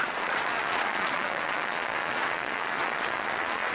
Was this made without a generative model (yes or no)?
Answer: no